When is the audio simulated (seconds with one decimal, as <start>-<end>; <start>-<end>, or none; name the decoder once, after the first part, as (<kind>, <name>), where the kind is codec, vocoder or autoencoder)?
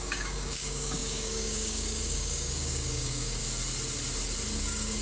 0.0-3.4 (codec, DAC); 4.6-5.0